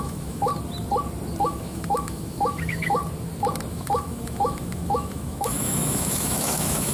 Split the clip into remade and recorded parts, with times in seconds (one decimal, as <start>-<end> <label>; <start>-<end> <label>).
0.0-0.5 remade; 0.5-1.4 recorded; 1.4-3.0 remade; 3.0-3.7 recorded; 3.7-6.9 remade